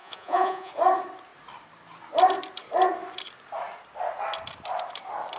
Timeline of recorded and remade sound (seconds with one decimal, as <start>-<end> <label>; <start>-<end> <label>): 0.0-0.7 remade; 0.7-5.4 recorded